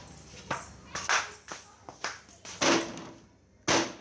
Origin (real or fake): real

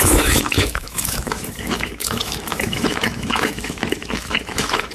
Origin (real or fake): fake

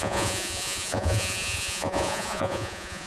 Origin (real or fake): fake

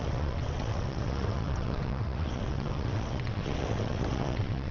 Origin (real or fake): fake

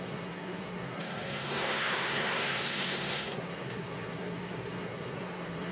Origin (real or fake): fake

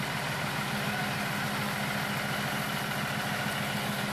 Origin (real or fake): real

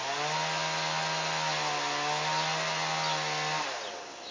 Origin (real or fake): real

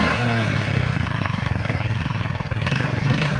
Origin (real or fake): fake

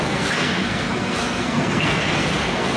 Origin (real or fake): fake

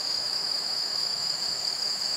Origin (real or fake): fake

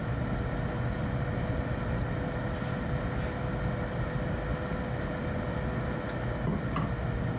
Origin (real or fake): real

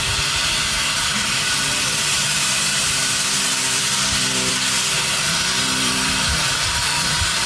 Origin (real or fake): fake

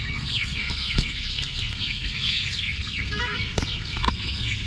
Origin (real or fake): fake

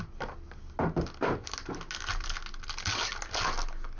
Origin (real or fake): real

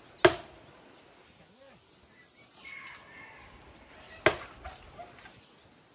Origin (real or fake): real